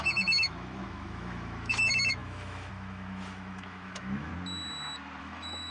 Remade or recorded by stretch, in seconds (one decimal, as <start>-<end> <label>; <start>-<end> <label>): 0.0-4.3 remade; 4.3-5.2 recorded; 5.2-5.7 remade

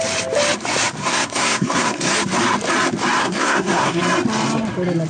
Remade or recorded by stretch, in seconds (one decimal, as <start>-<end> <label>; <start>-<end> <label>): 0.0-1.0 recorded; 1.0-2.1 remade; 2.1-3.2 recorded; 3.2-4.0 remade; 4.0-5.1 recorded

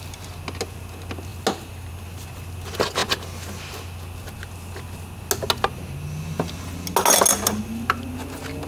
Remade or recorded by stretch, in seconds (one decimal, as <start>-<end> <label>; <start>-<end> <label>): 0.0-8.7 recorded

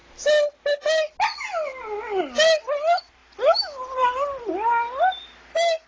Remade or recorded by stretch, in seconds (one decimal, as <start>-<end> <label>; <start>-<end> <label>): 0.0-3.2 recorded; 3.2-4.5 remade; 4.5-5.9 recorded

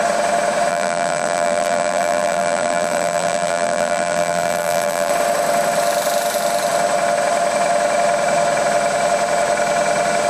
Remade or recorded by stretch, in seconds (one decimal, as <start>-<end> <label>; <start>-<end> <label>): 0.0-0.7 recorded; 0.7-5.1 remade; 5.1-10.3 recorded